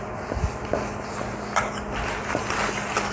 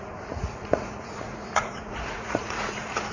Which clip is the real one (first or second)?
first